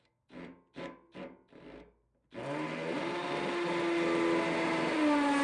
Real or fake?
real